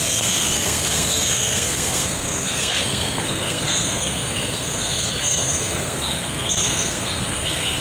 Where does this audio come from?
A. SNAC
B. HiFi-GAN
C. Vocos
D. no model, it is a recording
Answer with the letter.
A